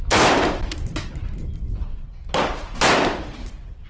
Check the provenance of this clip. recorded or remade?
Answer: recorded